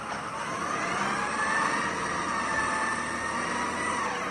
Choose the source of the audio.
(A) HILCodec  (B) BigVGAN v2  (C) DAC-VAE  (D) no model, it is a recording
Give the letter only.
D